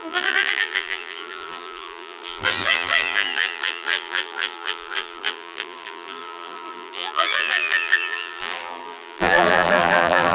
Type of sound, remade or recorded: remade